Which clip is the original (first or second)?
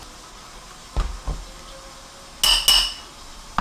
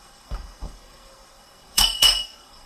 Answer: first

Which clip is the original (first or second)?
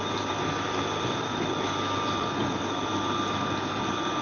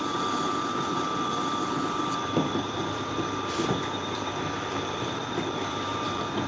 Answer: first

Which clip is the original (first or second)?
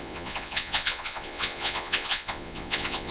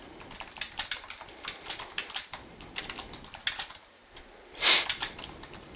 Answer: second